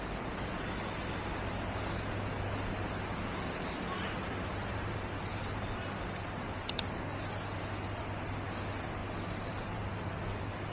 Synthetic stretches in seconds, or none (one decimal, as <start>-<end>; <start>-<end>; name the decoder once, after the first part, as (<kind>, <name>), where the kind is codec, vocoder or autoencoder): 4.6-5.6 (vocoder, BigVGAN v2); 9.0-10.1